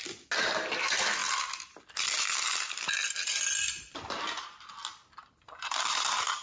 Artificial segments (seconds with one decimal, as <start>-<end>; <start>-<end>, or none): none